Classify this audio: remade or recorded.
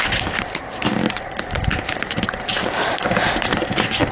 recorded